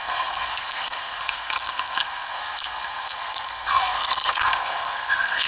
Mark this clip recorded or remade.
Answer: remade